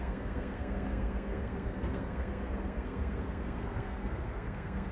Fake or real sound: fake